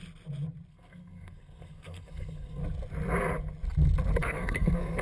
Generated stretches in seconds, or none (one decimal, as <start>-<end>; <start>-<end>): 0.7-2.6; 4.2-5.0